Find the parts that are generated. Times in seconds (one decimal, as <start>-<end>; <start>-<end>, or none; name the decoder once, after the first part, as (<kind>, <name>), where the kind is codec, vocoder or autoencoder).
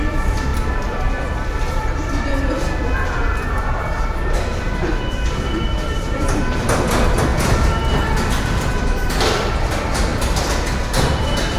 0.0-7.3 (vocoder, BigVGAN v2); 7.9-10.1; 10.7-11.6